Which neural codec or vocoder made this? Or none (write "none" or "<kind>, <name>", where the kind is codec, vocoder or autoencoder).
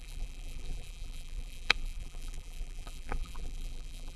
vocoder, BigVGAN v2